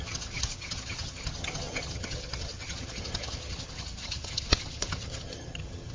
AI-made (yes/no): yes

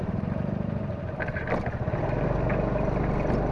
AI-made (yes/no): no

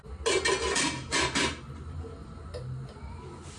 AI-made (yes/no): no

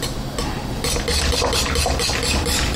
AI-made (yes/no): no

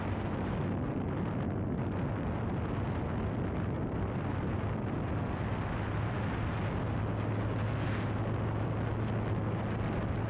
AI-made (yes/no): no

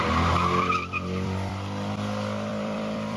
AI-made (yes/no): yes